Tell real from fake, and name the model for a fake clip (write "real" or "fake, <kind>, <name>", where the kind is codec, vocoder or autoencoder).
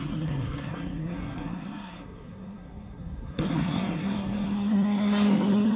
fake, codec, SNAC